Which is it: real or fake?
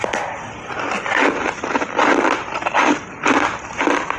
real